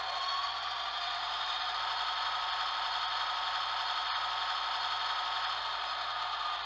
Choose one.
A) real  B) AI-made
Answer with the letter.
A